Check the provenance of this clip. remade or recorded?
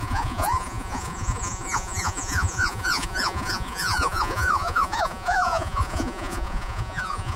remade